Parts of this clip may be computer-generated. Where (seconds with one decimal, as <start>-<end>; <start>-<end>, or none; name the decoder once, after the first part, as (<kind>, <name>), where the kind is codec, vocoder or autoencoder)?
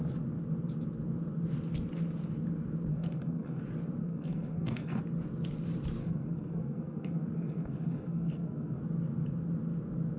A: 2.9-3.6 (codec, SNAC); 4.0-5.0; 6.0-8.8